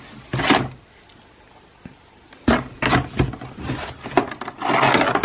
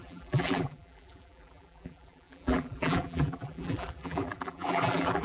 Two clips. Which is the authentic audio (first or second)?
first